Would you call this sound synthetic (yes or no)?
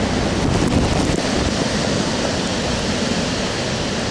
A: no